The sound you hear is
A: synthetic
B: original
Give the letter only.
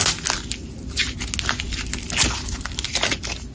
B